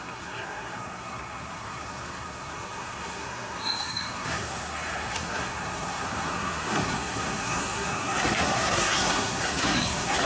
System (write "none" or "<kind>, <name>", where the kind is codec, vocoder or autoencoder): codec, SNAC